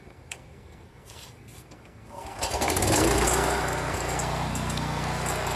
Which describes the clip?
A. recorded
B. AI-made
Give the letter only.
B